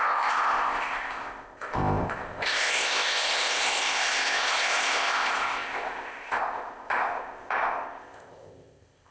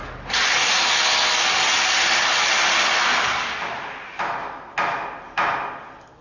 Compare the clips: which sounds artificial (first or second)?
first